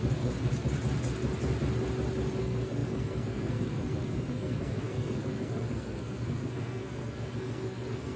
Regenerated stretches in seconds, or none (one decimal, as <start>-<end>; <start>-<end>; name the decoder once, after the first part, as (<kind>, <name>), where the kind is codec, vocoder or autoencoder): 0.0-0.5 (codec, SNAC); 2.4-8.2